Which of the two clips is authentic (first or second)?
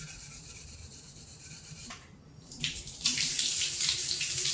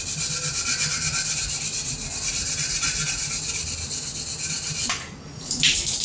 second